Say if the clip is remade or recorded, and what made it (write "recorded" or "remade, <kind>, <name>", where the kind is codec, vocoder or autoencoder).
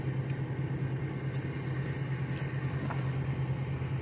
recorded